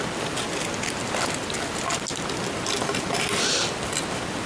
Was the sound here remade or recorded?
recorded